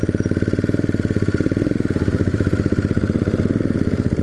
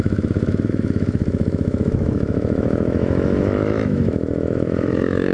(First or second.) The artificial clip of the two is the second